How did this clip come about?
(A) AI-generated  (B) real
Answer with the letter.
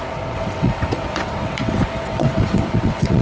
A